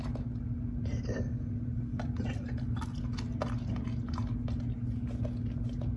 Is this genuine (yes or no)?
yes